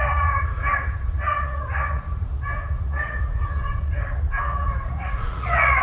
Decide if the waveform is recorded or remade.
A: remade